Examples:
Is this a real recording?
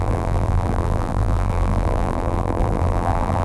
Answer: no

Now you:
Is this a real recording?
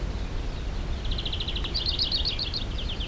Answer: yes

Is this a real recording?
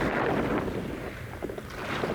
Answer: yes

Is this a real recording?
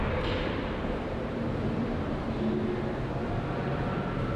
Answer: yes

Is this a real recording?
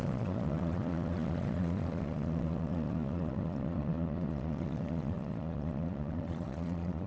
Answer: no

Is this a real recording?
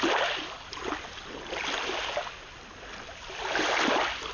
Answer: yes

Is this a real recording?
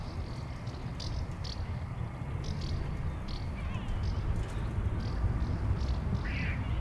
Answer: yes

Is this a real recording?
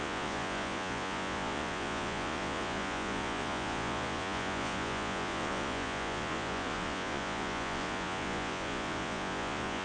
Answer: no